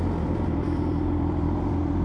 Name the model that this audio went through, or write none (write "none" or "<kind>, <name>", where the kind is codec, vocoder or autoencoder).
vocoder, BigVGAN v2